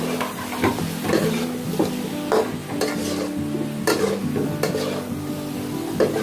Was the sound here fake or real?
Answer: real